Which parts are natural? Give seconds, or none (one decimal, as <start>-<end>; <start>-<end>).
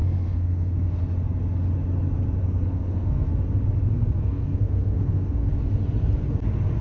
1.0-2.4; 3.3-3.8; 5.5-6.8